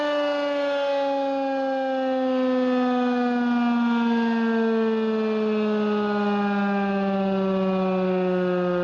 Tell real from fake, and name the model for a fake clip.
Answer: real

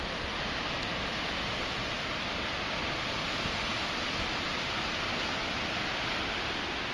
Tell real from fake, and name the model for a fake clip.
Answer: real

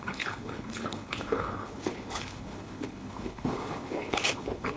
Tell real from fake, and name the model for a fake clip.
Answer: fake, codec, HILCodec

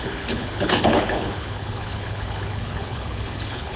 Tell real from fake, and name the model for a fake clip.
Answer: fake, codec, HILCodec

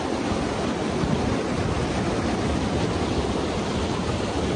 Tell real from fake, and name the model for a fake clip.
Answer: real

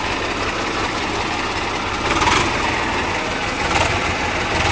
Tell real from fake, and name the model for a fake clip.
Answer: real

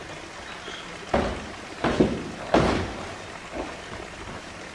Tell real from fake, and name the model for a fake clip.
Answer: real